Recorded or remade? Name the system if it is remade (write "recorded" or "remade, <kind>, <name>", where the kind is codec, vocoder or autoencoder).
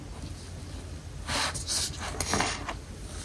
recorded